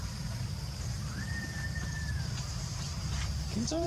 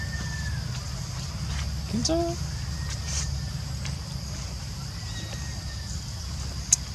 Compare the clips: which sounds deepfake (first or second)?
first